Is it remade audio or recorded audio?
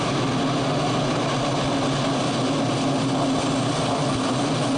recorded